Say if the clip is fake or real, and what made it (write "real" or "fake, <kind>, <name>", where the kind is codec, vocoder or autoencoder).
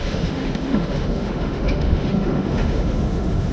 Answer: fake, autoencoder, DAC-VAE